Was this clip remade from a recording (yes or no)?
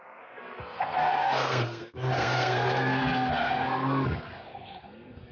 yes